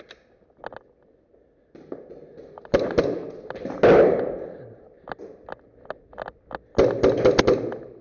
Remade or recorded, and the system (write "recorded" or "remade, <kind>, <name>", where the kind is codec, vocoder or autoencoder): recorded